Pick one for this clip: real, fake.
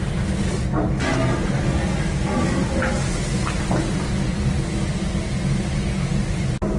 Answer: real